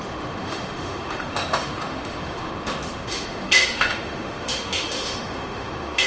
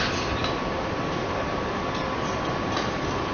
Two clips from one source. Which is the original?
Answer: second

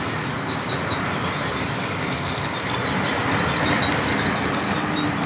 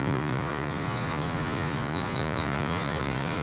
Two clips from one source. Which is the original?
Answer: first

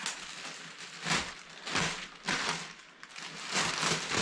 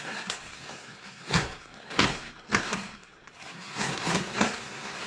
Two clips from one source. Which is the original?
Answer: first